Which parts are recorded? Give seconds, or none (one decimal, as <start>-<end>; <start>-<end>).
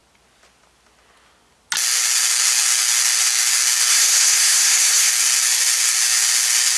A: 0.0-3.9; 5.1-6.8